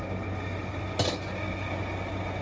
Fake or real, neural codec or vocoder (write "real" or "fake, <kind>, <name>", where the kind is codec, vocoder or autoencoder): real